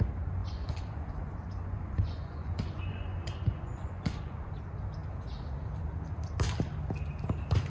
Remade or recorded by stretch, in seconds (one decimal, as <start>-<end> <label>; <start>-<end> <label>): 0.0-0.4 recorded; 0.4-4.5 remade; 4.5-7.7 recorded